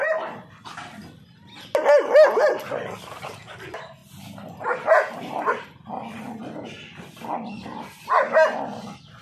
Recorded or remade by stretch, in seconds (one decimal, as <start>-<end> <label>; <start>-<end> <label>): 0.0-9.2 recorded